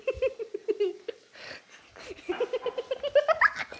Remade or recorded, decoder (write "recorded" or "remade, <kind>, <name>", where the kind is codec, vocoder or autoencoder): recorded